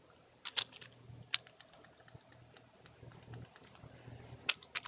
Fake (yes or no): no